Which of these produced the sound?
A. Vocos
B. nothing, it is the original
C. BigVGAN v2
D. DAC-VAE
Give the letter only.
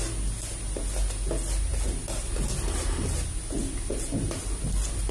B